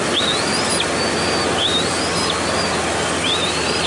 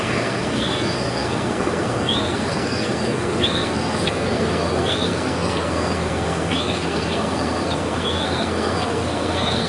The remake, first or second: second